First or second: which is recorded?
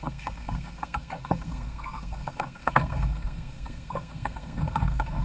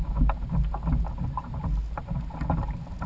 second